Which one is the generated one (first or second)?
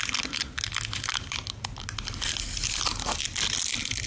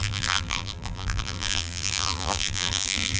second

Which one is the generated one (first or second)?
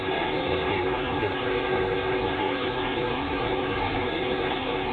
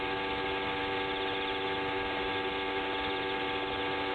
first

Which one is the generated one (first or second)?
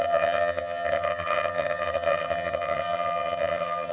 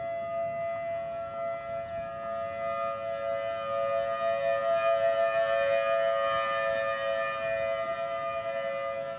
first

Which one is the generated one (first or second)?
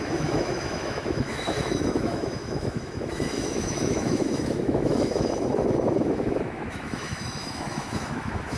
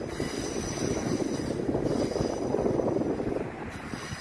first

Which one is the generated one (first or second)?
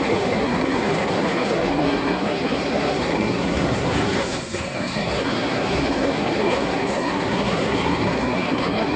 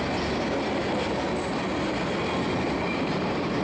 first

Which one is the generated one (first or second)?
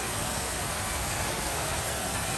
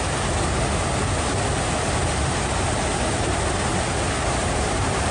first